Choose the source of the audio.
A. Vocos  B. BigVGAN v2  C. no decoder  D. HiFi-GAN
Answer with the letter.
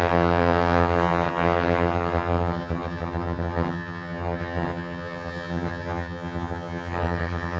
D